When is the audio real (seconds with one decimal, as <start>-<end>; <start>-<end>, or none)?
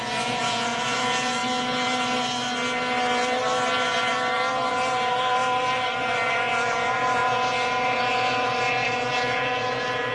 1.4-4.7; 5.4-6.3